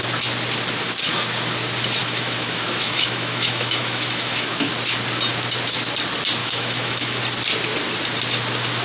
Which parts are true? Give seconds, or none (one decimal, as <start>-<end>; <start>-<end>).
0.0-2.0; 4.7-6.4; 7.2-8.8